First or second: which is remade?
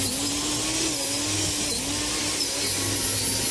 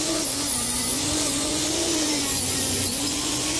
second